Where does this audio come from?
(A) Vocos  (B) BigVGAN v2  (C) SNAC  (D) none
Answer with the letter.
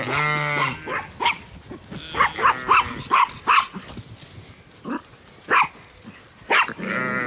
D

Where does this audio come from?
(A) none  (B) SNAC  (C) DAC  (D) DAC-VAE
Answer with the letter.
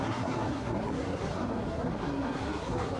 B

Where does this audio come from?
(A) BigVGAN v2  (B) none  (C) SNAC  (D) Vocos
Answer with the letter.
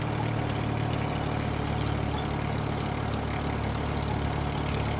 B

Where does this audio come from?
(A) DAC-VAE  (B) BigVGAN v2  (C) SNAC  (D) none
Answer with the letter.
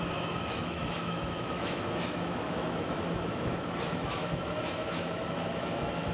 A